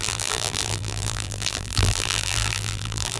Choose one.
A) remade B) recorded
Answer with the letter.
A